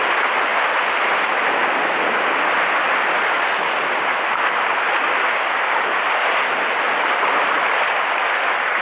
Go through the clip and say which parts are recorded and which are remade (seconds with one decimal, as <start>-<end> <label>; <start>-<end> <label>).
0.0-8.8 recorded